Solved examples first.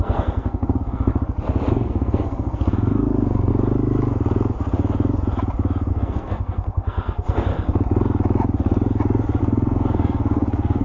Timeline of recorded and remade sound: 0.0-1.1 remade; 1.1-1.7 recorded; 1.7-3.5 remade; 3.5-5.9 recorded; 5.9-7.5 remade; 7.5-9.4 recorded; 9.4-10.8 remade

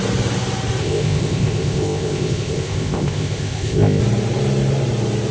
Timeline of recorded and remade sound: 0.0-0.8 recorded; 0.8-4.0 remade; 4.0-5.3 recorded

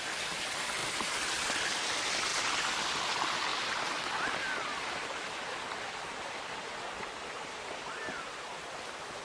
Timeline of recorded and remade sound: 0.0-9.2 recorded